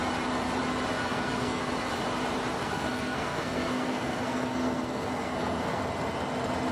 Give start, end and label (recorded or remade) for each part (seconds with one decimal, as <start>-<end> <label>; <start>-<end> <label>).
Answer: 0.0-1.0 recorded; 1.0-1.6 remade; 1.6-2.6 recorded; 2.6-5.8 remade; 5.8-6.7 recorded